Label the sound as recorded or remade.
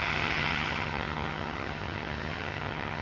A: remade